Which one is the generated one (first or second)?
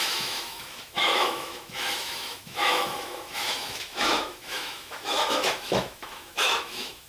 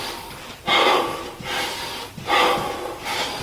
first